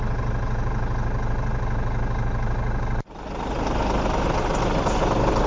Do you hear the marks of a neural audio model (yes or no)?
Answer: no